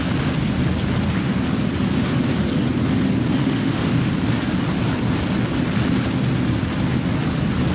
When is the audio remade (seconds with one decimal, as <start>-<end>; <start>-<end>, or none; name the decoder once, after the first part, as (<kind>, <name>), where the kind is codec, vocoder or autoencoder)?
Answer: 3.4-4.1 (autoencoder, DAC-VAE)